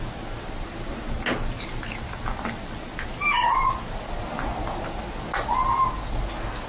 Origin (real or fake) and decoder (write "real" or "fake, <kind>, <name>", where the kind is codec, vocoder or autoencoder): real